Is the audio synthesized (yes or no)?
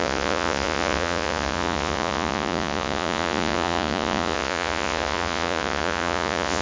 yes